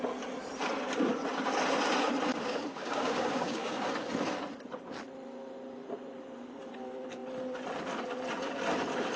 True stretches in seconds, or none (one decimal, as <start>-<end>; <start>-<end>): 0.0-2.3; 3.9-9.2